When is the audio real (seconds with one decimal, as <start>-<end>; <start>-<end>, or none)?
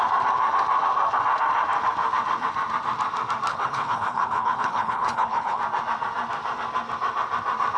0.0-3.5; 5.6-7.8